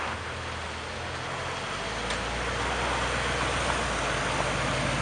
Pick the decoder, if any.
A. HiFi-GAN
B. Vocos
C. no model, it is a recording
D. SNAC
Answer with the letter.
C